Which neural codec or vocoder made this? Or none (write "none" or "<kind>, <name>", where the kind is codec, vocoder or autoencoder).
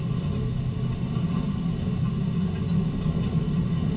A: none